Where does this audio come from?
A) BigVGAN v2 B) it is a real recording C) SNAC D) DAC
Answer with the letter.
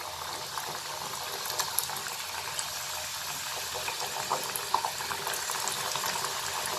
B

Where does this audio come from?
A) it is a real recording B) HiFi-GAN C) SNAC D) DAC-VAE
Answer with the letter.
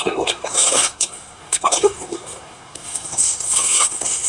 C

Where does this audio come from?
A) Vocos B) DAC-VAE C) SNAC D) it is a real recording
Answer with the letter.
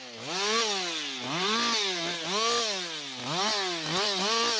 D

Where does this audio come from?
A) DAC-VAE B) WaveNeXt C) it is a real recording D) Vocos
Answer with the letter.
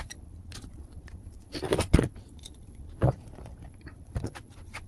D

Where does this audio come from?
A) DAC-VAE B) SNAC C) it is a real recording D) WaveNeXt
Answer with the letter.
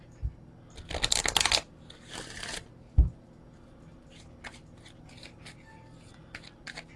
C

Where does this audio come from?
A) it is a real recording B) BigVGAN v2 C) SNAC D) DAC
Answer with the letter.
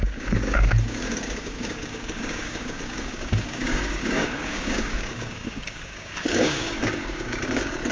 D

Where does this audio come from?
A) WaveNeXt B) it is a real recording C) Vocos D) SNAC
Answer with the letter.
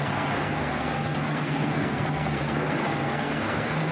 D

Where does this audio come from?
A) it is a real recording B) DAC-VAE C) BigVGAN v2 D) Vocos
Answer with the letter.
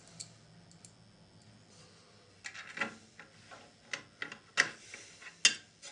A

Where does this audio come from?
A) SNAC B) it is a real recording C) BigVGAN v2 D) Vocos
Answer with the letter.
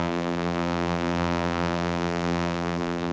C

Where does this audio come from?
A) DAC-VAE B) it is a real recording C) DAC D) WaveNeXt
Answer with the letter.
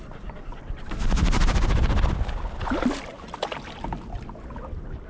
B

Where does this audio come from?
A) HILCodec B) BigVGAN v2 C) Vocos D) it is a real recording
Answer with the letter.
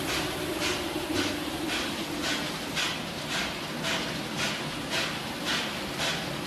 D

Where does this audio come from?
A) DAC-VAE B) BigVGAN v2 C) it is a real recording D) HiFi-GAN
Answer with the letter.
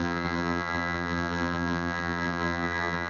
B